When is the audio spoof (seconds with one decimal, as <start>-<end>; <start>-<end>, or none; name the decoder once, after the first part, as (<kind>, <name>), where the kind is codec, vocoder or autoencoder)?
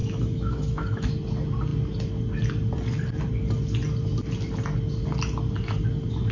0.0-1.1 (autoencoder, DAC-VAE)